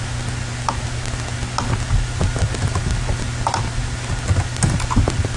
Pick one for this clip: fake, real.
real